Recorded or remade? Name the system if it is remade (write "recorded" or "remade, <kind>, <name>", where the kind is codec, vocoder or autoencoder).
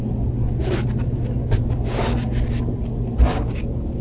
recorded